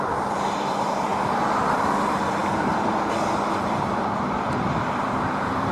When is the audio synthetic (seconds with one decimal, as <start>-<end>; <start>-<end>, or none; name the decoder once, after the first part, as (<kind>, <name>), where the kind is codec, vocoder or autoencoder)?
0.0-1.1 (vocoder, BigVGAN v2); 1.6-5.7